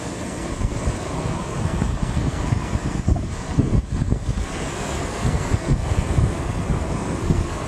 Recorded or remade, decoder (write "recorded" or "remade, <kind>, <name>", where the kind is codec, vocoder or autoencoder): remade, codec, SNAC